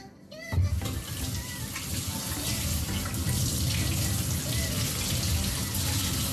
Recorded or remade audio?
recorded